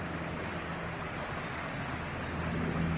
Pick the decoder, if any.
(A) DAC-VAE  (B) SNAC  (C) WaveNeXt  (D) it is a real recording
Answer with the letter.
D